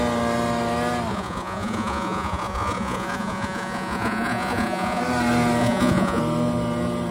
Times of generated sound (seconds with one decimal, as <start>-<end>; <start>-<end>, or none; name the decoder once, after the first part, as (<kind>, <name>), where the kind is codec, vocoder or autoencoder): 1.1-5.0 (vocoder, Vocos); 5.6-6.2